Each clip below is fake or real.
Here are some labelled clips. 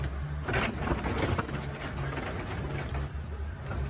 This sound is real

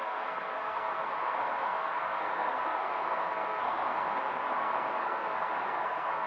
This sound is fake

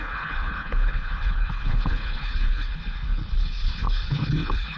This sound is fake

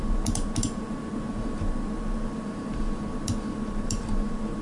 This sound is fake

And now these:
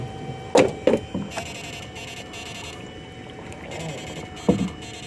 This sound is real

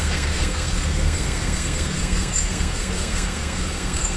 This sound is fake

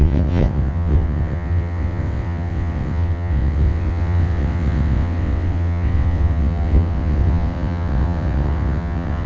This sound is fake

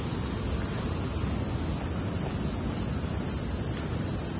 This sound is real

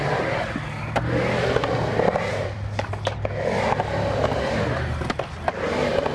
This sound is real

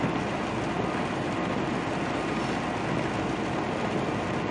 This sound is real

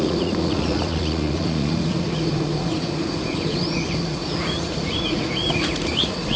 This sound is fake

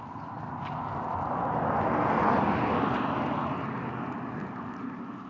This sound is real